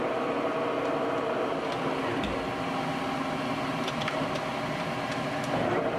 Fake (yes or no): no